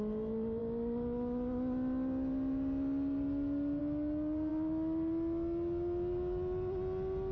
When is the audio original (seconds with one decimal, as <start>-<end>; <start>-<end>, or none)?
0.0-7.3